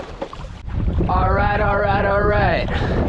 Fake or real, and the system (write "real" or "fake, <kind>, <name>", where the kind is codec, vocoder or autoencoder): fake, vocoder, BigVGAN v2